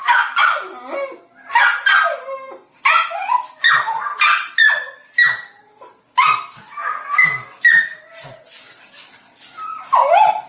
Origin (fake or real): real